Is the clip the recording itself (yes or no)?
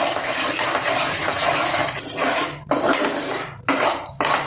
no